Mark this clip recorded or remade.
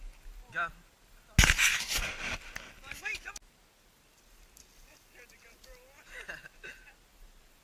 recorded